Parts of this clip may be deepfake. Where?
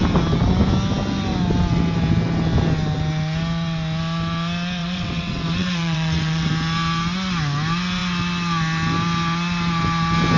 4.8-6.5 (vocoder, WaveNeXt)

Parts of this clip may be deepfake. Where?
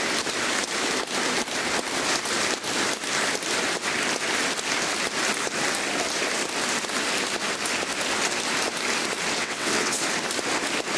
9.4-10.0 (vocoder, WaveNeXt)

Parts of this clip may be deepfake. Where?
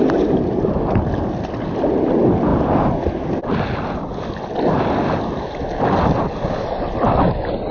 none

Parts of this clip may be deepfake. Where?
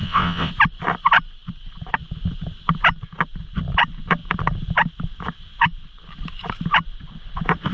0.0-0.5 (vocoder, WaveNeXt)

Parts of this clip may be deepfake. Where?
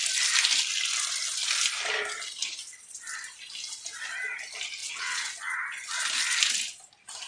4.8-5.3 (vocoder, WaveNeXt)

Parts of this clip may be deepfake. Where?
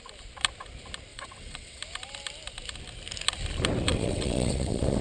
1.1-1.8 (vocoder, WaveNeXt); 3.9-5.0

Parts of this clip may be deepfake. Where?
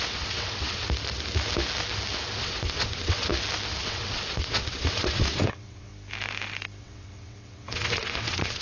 0.0-0.8 (vocoder, WaveNeXt); 2.4-3.3; 3.8-5.9; 6.8-8.6